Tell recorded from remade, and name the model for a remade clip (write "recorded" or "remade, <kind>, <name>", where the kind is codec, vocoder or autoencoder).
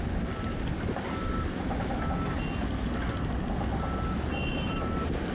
recorded